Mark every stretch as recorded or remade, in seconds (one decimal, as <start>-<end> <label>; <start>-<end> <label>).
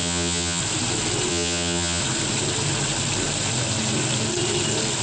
0.0-0.6 remade; 0.6-1.3 recorded; 1.3-2.0 remade; 2.0-5.0 recorded